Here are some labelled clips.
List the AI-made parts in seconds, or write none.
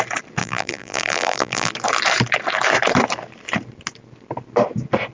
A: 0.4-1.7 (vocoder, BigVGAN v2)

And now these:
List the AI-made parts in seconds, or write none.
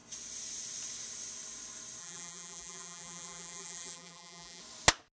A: 2.0-4.6 (vocoder, BigVGAN v2)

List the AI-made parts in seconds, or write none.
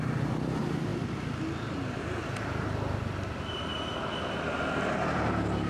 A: none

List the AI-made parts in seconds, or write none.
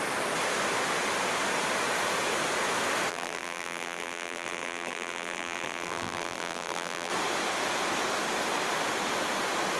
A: 3.1-7.1 (vocoder, BigVGAN v2)